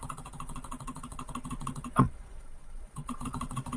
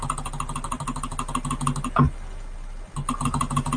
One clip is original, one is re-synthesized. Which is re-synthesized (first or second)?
first